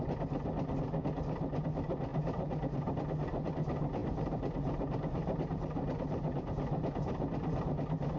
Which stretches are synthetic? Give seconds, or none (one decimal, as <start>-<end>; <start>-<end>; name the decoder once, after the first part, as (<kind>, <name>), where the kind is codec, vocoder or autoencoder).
2.1-2.9 (vocoder, BigVGAN v2); 4.0-7.6